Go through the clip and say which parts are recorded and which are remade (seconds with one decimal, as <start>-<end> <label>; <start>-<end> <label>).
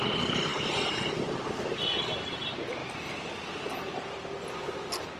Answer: 0.0-5.2 recorded